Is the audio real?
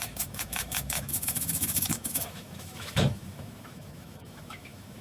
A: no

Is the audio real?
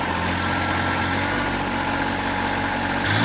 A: yes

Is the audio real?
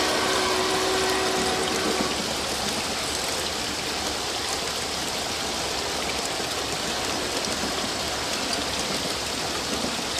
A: yes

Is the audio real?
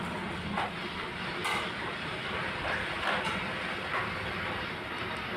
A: yes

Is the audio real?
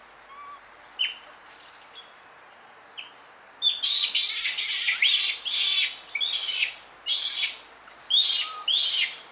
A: yes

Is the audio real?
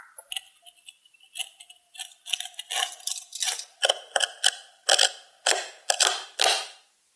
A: yes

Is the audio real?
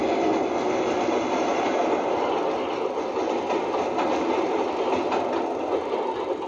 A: yes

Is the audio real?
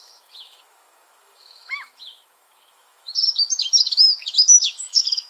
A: no